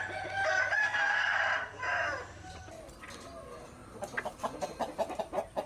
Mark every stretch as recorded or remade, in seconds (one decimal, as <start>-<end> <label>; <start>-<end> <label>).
0.0-0.8 recorded; 0.8-1.4 remade; 1.4-5.7 recorded